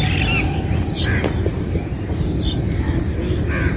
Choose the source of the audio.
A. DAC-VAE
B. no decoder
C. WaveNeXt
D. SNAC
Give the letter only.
B